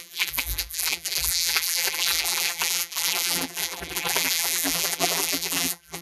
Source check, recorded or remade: remade